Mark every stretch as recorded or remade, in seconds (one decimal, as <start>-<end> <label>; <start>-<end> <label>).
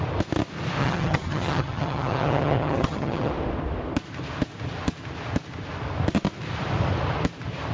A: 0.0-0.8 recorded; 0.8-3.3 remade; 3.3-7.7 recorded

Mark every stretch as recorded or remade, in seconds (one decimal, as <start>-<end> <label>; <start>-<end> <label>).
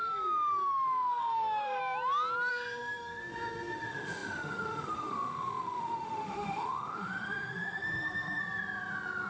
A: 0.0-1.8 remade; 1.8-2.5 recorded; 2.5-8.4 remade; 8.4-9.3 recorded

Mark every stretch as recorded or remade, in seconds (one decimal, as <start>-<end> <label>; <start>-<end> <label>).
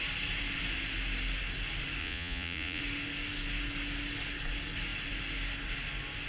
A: 0.0-2.0 recorded; 2.0-2.8 remade; 2.8-6.3 recorded